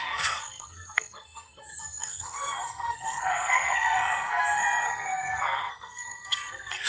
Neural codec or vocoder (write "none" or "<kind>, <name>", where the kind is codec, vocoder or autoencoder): codec, SNAC